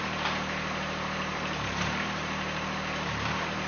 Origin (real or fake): fake